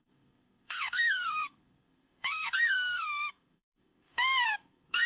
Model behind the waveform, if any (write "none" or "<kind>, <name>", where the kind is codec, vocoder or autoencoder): codec, SNAC